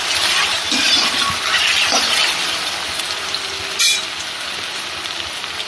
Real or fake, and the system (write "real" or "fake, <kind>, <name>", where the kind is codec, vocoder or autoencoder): real